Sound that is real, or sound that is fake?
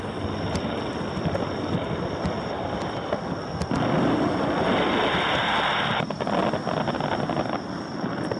real